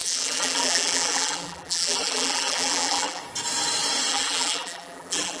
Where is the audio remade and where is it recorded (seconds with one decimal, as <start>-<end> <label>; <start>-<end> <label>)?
0.0-3.2 remade; 3.2-4.1 recorded; 4.1-5.4 remade